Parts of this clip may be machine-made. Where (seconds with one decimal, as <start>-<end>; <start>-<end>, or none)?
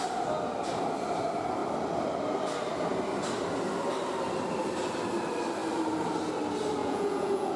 6.8-7.6